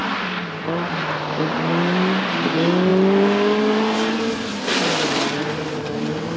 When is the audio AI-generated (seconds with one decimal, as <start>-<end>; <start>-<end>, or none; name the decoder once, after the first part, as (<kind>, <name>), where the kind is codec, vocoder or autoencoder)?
none